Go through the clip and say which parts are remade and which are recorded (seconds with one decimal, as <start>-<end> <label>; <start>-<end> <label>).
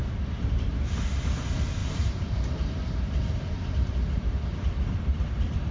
0.0-0.7 remade; 0.7-1.8 recorded; 1.8-4.3 remade; 4.3-5.7 recorded